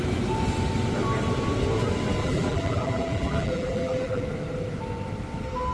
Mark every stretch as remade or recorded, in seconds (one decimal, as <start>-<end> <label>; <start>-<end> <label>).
0.0-2.2 recorded; 2.2-4.2 remade; 4.2-5.7 recorded